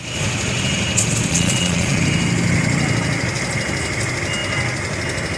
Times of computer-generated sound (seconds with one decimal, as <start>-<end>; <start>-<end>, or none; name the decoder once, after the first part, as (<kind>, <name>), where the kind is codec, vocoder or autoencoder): 1.3-2.0 (vocoder, Vocos)